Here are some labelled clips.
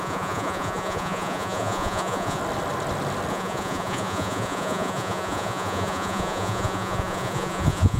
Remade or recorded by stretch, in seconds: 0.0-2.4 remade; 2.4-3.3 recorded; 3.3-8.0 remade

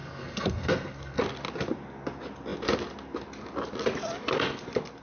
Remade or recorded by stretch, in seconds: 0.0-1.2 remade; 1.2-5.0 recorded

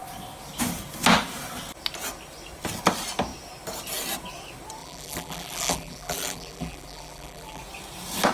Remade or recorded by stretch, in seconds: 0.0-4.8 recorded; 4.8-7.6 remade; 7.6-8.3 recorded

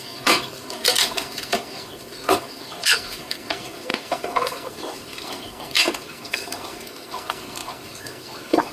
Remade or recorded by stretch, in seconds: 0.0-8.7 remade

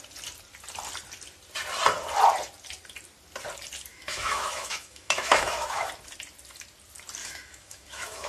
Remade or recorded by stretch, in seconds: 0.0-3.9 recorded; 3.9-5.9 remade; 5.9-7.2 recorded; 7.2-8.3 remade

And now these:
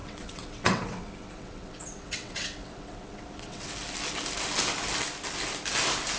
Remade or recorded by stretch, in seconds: 0.0-3.7 remade; 3.7-6.2 recorded